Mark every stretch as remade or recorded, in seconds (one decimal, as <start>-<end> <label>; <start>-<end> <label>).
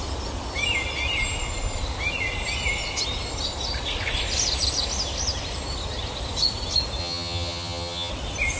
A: 0.0-7.0 recorded; 7.0-8.1 remade; 8.1-8.6 recorded